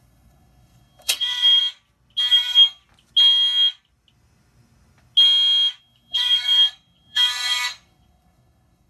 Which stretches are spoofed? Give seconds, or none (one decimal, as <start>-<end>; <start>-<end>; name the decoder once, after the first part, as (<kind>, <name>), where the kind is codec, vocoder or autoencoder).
0.0-1.6 (codec, SNAC); 2.3-2.8; 5.8-8.9